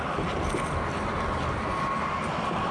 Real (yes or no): yes